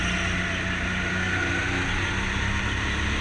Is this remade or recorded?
recorded